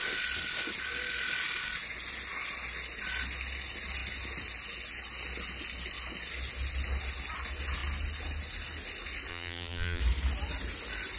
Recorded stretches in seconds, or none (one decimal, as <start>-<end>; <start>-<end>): 0.0-9.3; 10.0-11.2

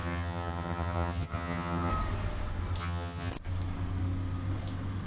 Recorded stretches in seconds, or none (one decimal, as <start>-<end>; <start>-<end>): 1.9-2.8; 3.3-5.1

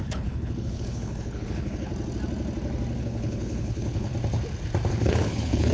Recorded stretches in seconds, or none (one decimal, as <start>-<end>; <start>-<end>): 1.9-3.0; 4.1-4.9

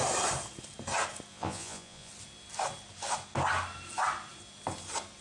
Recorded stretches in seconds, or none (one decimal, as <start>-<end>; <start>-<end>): 0.0-1.3; 2.1-5.2

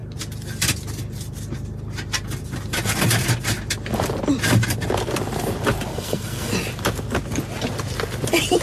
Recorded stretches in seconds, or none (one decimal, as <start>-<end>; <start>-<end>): 0.0-5.9; 6.5-8.6

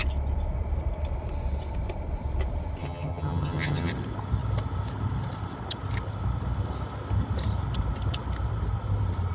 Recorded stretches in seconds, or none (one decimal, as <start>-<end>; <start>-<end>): 0.0-2.8; 3.9-9.3

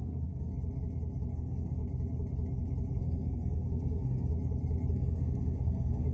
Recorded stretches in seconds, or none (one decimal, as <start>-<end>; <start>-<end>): 0.5-1.3; 1.8-3.0; 4.3-4.9

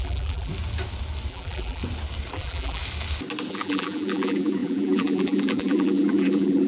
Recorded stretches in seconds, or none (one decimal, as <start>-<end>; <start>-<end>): 0.5-1.3; 1.8-2.3; 2.8-3.5